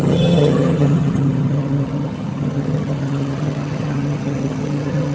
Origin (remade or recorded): remade